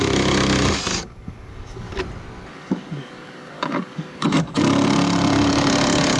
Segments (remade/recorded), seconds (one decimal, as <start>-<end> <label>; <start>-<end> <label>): 0.0-0.9 recorded; 0.9-2.0 remade; 2.0-2.5 recorded; 2.5-4.6 remade; 4.6-6.2 recorded

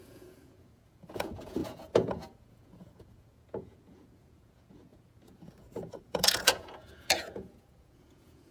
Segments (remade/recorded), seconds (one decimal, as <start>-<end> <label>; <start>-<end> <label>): 0.0-8.5 remade

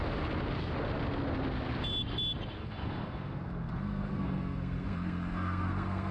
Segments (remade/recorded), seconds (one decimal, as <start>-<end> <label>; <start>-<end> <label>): 0.0-2.6 recorded; 2.6-6.1 remade

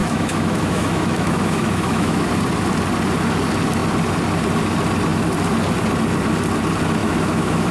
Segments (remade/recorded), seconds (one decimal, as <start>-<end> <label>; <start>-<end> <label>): 0.0-2.3 remade; 2.3-7.0 recorded; 7.0-7.7 remade